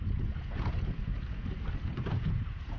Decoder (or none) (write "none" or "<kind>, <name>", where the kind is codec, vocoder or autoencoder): vocoder, Vocos